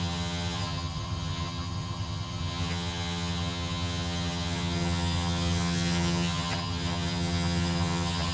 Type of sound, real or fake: fake